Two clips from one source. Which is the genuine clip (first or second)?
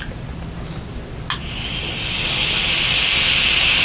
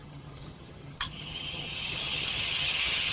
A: first